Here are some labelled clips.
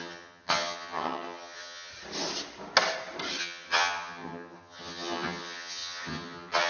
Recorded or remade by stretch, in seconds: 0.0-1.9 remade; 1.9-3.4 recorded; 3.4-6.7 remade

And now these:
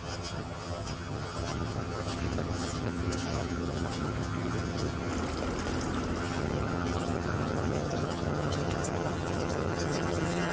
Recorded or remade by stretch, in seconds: 0.0-5.1 remade; 5.1-6.2 recorded; 6.2-10.5 remade